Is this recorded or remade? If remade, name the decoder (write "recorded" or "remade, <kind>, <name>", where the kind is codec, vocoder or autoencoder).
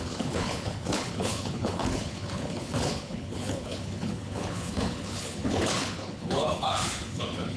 remade, codec, HILCodec